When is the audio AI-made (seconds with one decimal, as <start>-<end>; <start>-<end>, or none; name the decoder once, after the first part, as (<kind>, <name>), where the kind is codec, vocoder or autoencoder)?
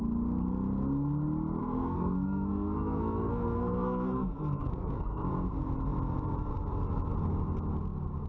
1.6-5.3 (codec, SNAC)